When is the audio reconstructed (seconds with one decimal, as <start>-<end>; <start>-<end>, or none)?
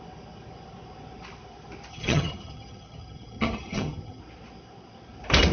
1.9-4.2